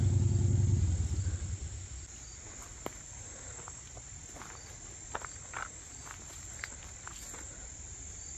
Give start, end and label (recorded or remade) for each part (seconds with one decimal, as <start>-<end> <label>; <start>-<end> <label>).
0.0-8.4 recorded